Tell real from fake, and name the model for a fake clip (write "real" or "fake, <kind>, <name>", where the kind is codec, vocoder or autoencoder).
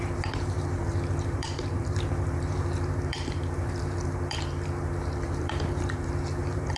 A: fake, vocoder, BigVGAN v2